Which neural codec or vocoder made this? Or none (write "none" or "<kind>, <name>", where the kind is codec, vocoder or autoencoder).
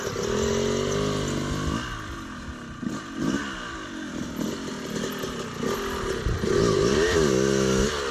none